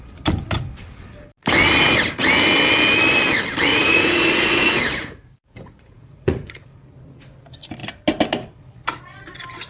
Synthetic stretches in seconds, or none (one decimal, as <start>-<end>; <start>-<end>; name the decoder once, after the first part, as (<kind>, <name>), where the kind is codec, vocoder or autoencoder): 3.7-6.5 (vocoder, Vocos)